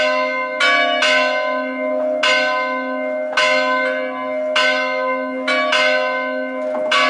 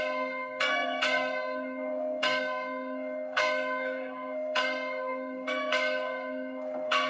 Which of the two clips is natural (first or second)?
first